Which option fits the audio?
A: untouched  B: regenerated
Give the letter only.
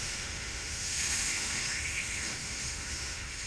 B